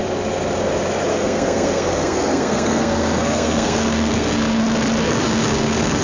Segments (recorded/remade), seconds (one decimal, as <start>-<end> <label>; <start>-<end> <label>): 0.0-1.1 recorded; 1.1-4.6 remade; 4.6-5.0 recorded; 5.0-6.0 remade